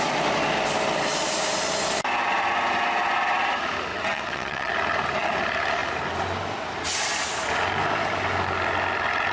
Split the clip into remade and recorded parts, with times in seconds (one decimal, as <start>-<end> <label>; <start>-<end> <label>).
0.0-3.9 recorded; 3.9-4.7 remade; 4.7-9.3 recorded